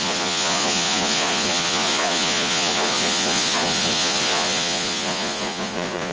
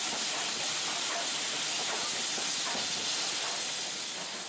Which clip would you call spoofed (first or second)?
first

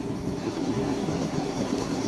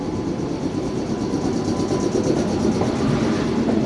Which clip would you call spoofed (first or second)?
first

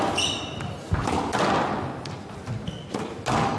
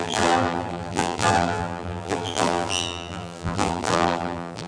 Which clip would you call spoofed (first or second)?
second